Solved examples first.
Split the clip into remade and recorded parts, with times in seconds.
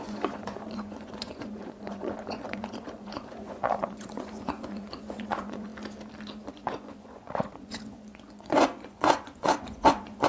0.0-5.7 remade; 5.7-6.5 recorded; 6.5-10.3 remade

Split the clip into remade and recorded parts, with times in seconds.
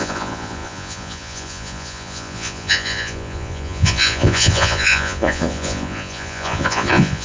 0.0-7.2 remade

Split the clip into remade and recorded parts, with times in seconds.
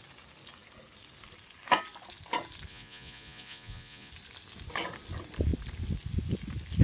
0.0-2.7 recorded; 2.7-4.1 remade; 4.1-6.8 recorded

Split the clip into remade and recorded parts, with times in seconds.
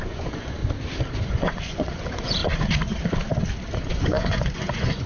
0.0-0.6 remade; 0.6-1.2 recorded; 1.2-2.4 remade; 2.4-3.9 recorded; 3.9-5.1 remade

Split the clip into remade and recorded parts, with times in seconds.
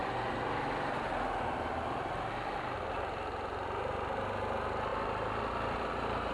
0.0-6.3 recorded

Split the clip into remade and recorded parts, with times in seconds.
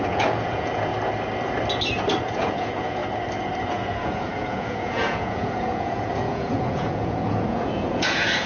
0.0-0.9 remade; 0.9-2.2 recorded; 2.2-3.0 remade; 3.0-3.7 recorded; 3.7-8.5 remade